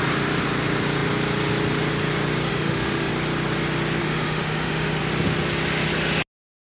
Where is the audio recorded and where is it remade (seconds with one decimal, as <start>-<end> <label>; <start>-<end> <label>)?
0.0-2.5 recorded; 2.5-3.1 remade; 3.1-4.0 recorded; 4.0-5.0 remade; 5.0-6.8 recorded